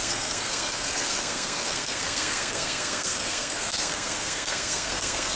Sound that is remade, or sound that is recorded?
remade